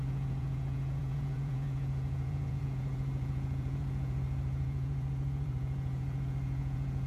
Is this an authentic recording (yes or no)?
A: no